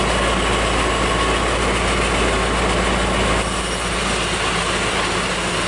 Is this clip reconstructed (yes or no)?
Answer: no